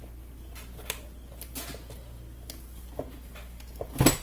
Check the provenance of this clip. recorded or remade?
recorded